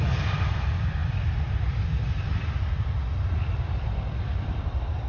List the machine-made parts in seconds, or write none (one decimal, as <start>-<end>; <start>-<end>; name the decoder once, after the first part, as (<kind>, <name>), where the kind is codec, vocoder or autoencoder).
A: 0.0-1.0 (vocoder, BigVGAN v2); 4.1-5.1